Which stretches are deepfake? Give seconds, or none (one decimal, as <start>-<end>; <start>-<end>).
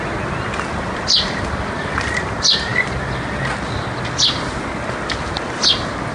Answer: none